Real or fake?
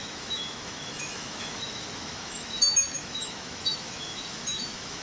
fake